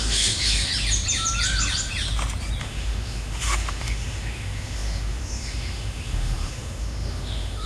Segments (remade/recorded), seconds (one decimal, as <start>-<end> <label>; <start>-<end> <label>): 0.0-0.7 remade; 0.7-2.6 recorded; 2.6-7.7 remade